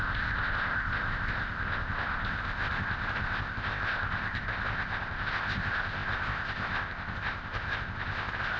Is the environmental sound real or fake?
fake